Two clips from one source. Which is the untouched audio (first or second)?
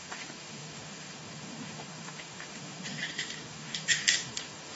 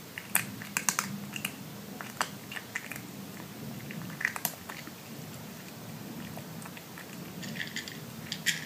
second